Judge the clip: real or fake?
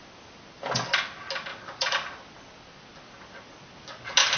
real